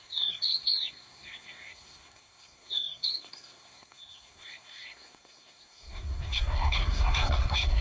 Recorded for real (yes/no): no